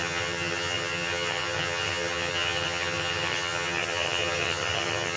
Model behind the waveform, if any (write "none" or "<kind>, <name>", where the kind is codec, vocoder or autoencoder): vocoder, HiFi-GAN